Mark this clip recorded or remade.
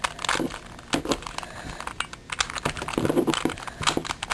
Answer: recorded